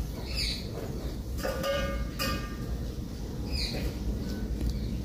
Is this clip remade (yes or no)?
yes